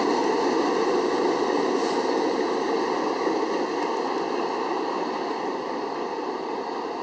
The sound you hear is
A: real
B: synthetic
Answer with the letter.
A